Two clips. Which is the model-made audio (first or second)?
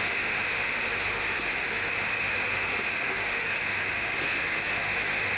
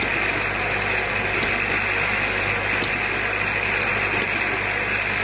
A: first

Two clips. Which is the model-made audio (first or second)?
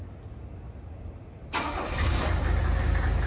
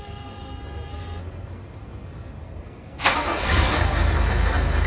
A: second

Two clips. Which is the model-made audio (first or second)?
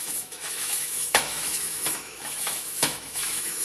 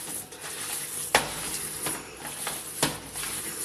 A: first